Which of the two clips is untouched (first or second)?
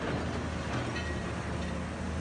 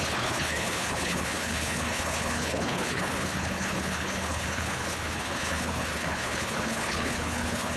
first